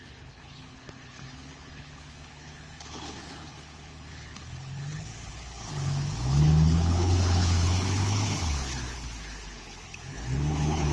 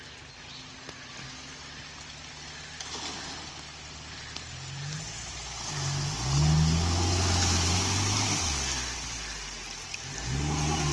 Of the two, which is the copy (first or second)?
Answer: first